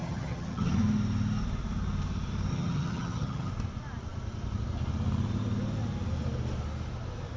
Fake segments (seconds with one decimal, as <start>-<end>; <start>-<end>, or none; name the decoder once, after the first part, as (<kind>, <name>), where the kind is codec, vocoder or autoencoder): 0.0-0.7 (vocoder, HiFi-GAN); 2.5-3.5